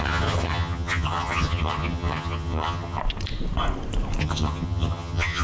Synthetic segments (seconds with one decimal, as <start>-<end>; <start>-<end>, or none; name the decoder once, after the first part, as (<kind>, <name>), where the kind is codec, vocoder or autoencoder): 0.0-3.0 (vocoder, HiFi-GAN); 4.2-5.4